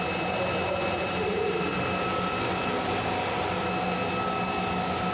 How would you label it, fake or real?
real